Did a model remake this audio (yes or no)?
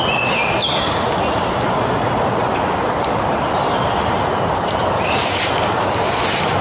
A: no